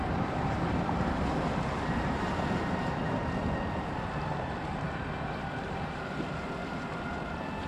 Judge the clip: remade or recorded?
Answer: remade